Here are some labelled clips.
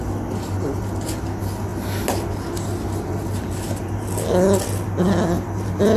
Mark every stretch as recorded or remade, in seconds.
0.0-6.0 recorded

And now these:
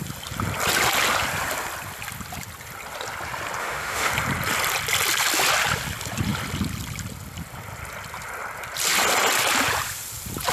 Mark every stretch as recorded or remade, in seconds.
0.0-3.6 recorded; 3.6-4.1 remade; 4.1-10.5 recorded

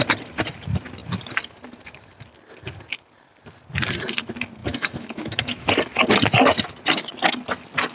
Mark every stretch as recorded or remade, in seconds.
0.0-4.6 recorded; 4.6-5.7 remade; 5.7-7.9 recorded

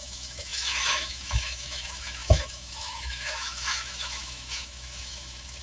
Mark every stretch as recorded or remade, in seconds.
0.0-5.6 remade

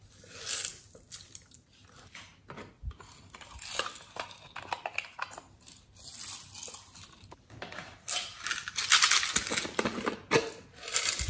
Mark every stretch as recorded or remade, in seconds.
0.0-11.3 recorded

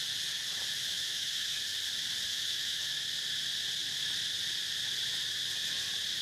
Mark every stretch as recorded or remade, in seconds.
0.0-0.9 recorded; 0.9-1.6 remade; 1.6-2.3 recorded; 2.3-2.9 remade; 2.9-6.2 recorded